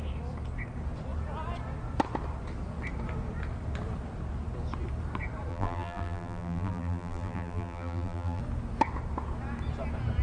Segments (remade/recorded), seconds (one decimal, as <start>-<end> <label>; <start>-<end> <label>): 0.0-5.5 recorded; 5.5-8.4 remade; 8.4-10.2 recorded